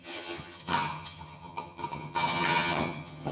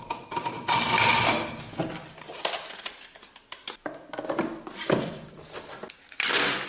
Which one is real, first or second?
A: second